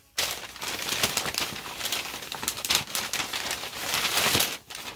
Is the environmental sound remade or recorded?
remade